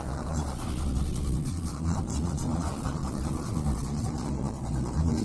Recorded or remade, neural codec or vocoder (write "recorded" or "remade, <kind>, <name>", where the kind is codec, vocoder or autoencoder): remade, vocoder, Vocos